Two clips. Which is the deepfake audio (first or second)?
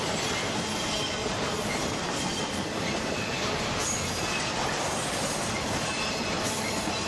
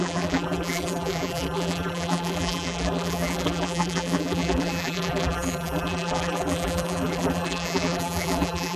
second